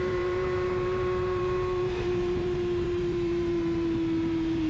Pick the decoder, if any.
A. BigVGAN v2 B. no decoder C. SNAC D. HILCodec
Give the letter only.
A